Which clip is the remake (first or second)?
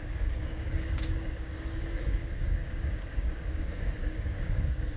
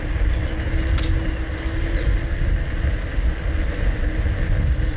first